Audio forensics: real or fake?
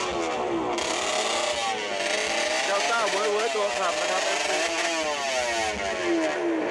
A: real